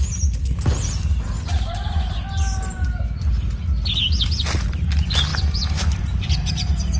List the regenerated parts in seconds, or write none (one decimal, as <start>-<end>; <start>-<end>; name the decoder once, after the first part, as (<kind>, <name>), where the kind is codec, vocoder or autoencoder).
none